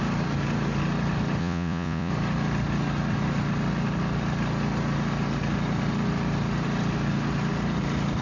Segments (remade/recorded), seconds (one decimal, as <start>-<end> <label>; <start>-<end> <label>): 0.0-1.4 recorded; 1.4-2.1 remade; 2.1-8.2 recorded